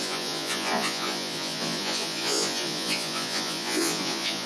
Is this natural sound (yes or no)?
no